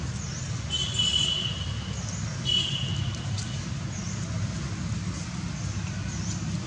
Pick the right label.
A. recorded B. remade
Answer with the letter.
A